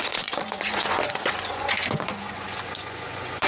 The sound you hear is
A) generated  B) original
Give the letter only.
A